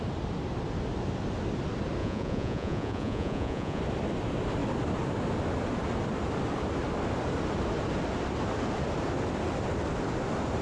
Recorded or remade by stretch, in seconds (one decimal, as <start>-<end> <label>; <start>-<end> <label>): 0.0-2.0 recorded; 2.0-3.8 remade; 3.8-10.6 recorded